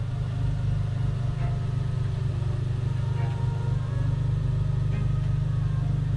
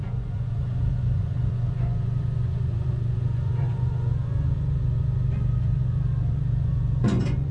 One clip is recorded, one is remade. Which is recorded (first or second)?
first